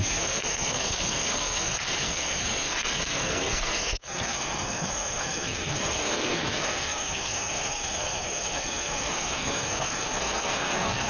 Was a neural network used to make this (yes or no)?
yes